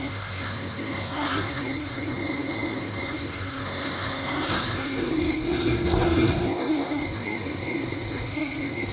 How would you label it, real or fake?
fake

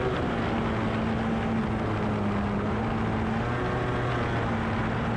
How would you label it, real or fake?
real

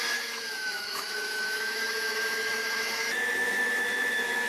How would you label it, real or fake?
fake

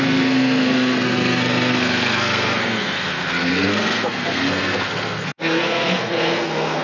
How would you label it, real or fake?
fake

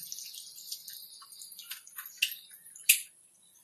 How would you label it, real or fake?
real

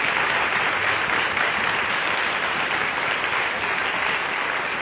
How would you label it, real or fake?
real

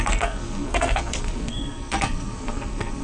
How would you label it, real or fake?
fake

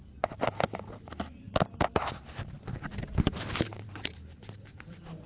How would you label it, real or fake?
fake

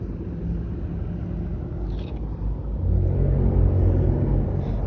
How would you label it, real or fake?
real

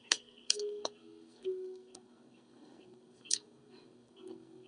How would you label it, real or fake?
fake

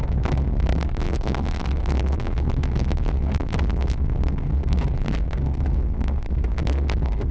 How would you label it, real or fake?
fake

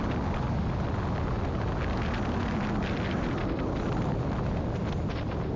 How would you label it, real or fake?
real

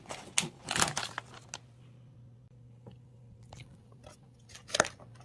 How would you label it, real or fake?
real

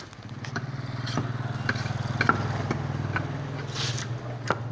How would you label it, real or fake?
real